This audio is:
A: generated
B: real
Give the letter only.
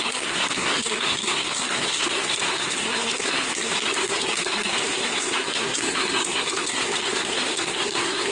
A